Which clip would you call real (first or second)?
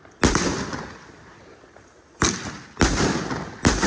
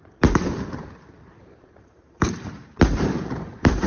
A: first